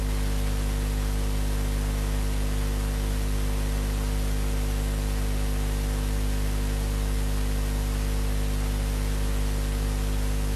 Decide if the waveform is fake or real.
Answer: real